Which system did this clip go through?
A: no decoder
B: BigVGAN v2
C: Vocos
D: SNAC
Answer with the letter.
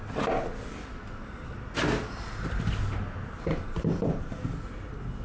A